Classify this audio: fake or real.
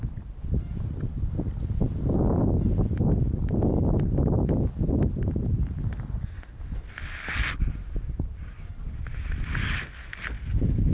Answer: real